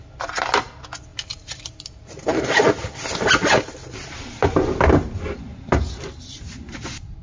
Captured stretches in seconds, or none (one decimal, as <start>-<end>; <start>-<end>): 0.0-1.1; 2.4-5.5; 6.4-7.2